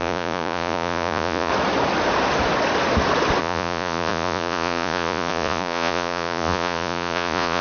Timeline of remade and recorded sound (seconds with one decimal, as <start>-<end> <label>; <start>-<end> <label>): 0.0-1.5 remade; 1.5-3.4 recorded; 3.4-7.6 remade